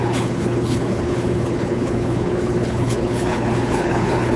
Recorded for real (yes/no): no